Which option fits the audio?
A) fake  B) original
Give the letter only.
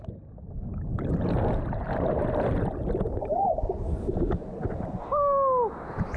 B